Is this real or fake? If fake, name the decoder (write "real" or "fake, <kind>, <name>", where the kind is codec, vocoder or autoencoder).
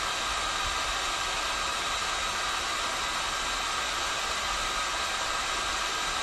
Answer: real